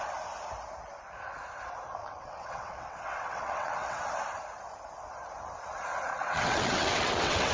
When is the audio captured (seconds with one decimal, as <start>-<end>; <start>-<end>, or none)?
0.0-2.0; 4.0-6.1